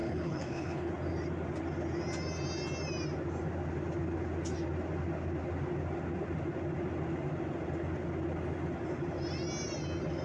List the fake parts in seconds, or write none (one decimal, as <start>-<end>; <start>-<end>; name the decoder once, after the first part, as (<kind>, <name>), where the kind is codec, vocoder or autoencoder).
0.0-0.9 (codec, HILCodec)